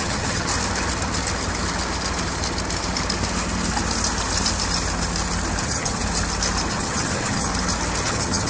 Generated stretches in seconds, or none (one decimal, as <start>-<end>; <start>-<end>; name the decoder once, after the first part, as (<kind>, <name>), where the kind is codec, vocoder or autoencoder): 0.0-0.5 (vocoder, HiFi-GAN); 5.6-6.0; 6.7-7.5; 8.0-8.5